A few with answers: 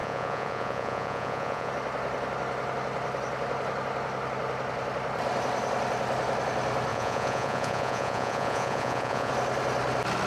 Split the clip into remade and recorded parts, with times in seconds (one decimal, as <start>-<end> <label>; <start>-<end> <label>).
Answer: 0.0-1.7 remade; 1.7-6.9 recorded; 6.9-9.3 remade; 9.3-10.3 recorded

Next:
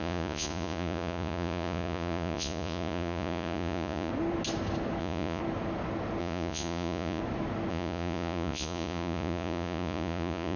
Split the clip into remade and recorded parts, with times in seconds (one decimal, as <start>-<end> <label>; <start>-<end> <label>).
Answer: 0.0-4.1 remade; 4.1-5.0 recorded; 5.0-5.4 remade; 5.4-6.2 recorded; 6.2-7.2 remade; 7.2-7.7 recorded; 7.7-10.6 remade

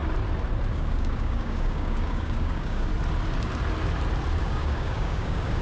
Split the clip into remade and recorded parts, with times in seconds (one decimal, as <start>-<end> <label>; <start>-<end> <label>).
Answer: 0.0-0.7 recorded; 0.7-2.9 remade; 2.9-4.4 recorded; 4.4-5.6 remade

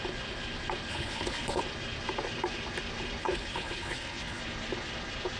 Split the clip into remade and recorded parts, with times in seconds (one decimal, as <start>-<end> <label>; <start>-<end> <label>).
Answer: 0.0-0.9 recorded; 0.9-1.6 remade; 1.6-3.2 recorded; 3.2-4.4 remade; 4.4-5.4 recorded